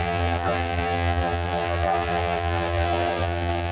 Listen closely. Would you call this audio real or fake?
fake